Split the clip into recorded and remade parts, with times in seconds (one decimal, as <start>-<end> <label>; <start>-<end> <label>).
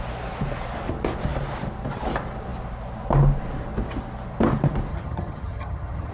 0.0-4.9 recorded; 4.9-6.1 remade